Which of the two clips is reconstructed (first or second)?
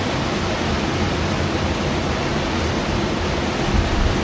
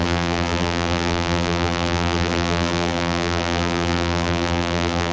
second